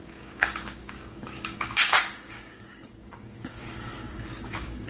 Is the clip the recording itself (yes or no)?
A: no